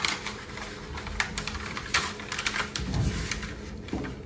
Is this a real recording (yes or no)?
yes